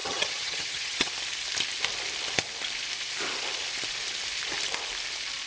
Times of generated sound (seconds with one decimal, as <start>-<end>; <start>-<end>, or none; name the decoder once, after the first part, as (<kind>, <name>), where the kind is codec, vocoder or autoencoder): 0.0-1.1 (vocoder, HiFi-GAN)